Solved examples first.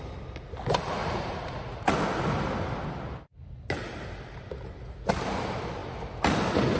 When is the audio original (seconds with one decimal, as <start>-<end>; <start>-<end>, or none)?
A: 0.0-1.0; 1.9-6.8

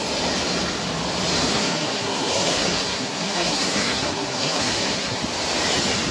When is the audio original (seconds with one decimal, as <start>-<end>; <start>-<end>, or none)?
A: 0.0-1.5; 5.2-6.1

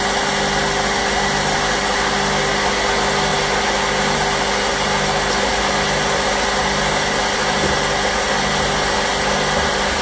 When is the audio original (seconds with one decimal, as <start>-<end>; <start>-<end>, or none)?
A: 0.0-10.0

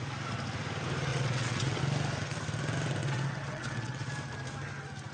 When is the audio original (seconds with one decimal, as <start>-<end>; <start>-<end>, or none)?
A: 0.0-1.1; 1.8-3.0; 4.1-5.1